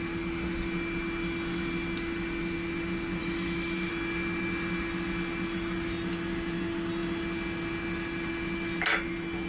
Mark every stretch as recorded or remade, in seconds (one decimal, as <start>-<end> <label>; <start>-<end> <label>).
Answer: 0.0-3.2 recorded; 3.2-3.9 remade; 3.9-9.5 recorded